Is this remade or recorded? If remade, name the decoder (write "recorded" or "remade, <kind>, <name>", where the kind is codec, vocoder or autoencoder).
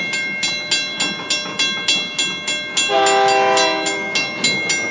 recorded